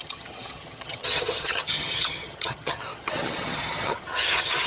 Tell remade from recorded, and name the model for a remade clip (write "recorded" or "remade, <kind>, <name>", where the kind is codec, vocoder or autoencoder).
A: remade, vocoder, HiFi-GAN